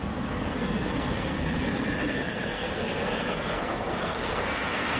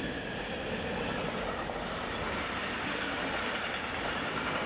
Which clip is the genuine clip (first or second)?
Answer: second